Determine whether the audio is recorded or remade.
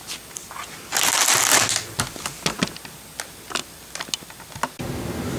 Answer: recorded